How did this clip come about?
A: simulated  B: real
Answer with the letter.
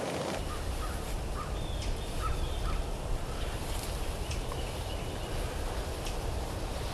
B